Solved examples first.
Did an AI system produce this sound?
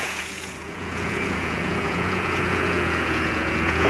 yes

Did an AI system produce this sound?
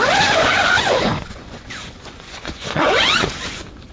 yes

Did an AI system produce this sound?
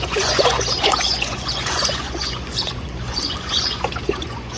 yes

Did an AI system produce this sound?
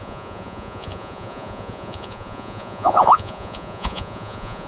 yes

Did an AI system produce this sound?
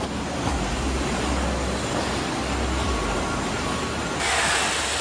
no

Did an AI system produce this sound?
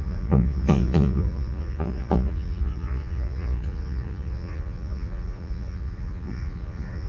yes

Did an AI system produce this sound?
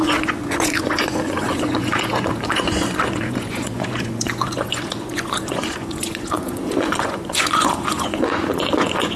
yes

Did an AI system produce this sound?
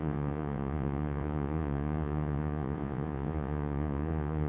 yes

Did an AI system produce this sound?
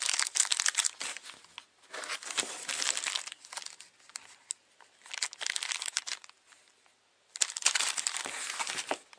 no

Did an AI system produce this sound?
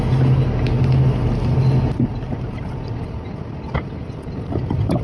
no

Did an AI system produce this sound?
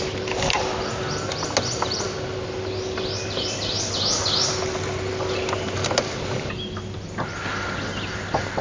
no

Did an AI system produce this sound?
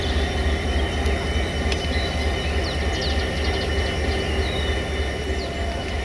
no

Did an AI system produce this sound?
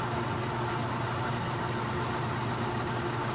no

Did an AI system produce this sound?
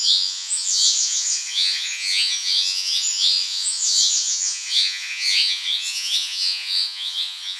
yes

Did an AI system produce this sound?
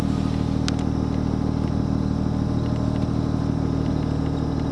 no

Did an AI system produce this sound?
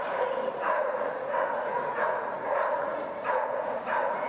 yes